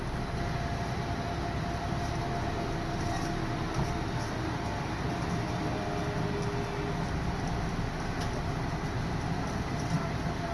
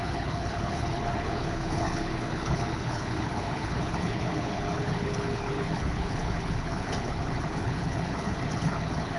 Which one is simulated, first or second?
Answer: second